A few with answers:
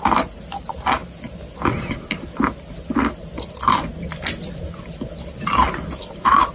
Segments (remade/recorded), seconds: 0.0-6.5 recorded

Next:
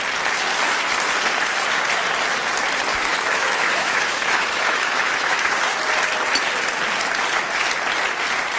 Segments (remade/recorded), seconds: 0.0-2.9 recorded; 2.9-5.5 remade; 5.5-8.6 recorded

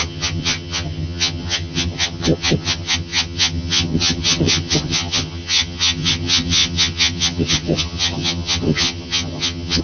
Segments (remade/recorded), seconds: 0.0-9.8 remade

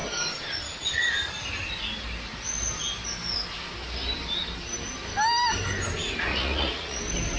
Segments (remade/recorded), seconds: 0.0-6.3 recorded; 6.3-7.0 remade; 7.0-7.4 recorded

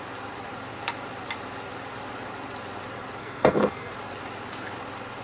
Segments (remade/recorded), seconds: 0.0-3.2 recorded; 3.2-3.9 remade; 3.9-5.2 recorded

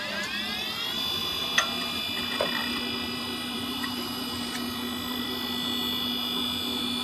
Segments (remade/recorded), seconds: 0.0-1.2 recorded; 1.2-2.0 remade; 2.0-2.6 recorded; 2.6-5.3 remade; 5.3-7.0 recorded

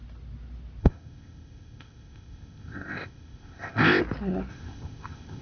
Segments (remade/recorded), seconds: 0.0-0.8 recorded; 0.8-4.0 remade; 4.0-4.5 recorded; 4.5-5.4 remade